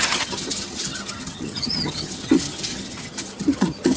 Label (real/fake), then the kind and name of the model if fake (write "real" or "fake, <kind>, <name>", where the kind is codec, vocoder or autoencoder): fake, vocoder, HiFi-GAN